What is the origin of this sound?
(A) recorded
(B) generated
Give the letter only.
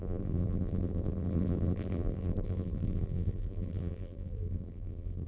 B